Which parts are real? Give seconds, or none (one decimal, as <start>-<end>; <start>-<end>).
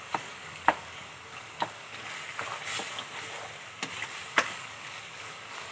1.9-4.3